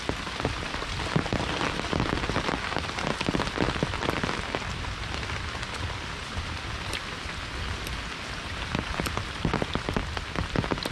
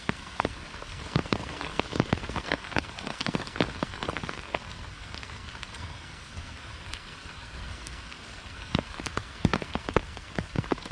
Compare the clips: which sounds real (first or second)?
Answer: first